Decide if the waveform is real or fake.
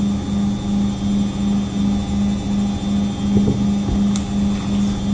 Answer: real